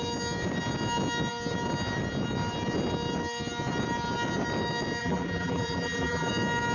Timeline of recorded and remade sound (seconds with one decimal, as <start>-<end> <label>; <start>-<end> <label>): 0.0-5.0 recorded; 5.0-6.3 remade; 6.3-6.7 recorded